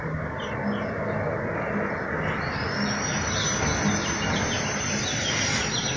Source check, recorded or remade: recorded